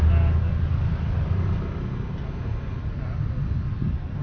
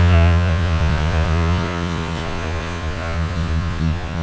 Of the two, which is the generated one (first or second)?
second